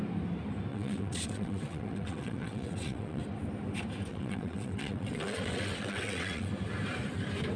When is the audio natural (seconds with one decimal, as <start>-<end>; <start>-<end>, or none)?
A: 0.0-0.7; 3.2-4.1; 6.5-7.6